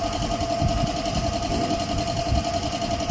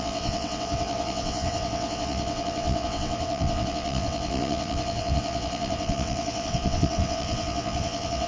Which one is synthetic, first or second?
second